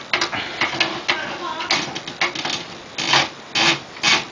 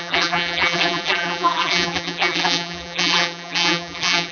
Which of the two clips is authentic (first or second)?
first